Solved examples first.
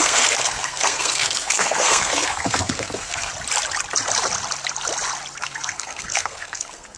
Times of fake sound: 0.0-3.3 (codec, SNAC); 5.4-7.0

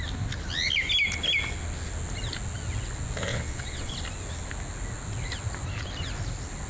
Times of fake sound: 3.3-3.9 (vocoder, WaveNeXt)

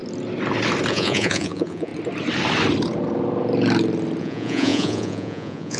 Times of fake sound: 0.9-1.9 (vocoder, Vocos); 4.2-5.8

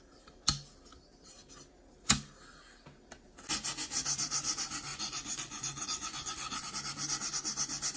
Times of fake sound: 4.9-6.7 (vocoder, Vocos)

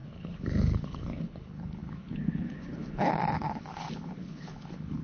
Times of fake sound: 0.0-5.0 (codec, HILCodec)

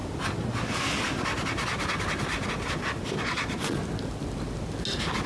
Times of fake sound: 3.2-3.8 (vocoder, Vocos)

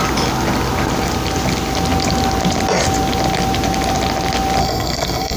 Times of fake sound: 4.6-5.4 (codec, SNAC)